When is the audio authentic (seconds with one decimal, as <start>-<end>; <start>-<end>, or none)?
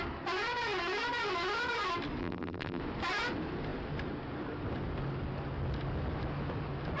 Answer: 0.0-2.2; 2.8-7.0